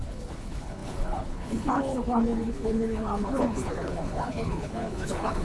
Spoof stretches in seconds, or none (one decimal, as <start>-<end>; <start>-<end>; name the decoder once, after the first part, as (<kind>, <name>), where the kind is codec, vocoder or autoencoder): 0.0-5.4 (codec, HILCodec)